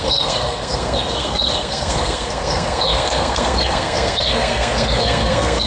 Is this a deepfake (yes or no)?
yes